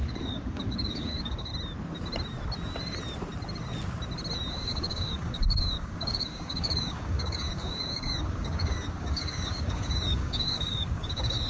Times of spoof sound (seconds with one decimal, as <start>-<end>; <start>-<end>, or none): 0.0-1.5; 4.5-11.5